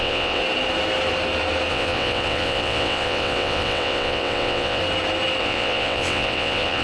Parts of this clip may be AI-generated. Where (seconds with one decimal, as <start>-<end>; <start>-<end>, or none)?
0.0-0.4; 1.7-4.8; 5.4-6.8